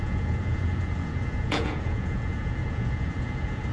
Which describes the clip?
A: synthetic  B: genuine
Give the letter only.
A